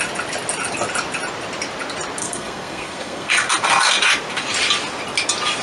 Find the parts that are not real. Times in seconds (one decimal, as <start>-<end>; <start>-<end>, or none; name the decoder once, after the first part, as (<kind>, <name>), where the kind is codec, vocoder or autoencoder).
2.2-3.3 (codec, SNAC)